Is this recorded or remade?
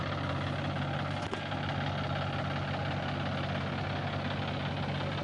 recorded